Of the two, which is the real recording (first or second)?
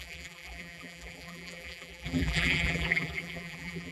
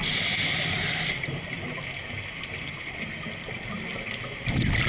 second